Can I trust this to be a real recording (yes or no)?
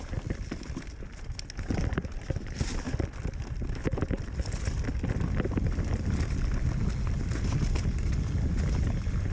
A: yes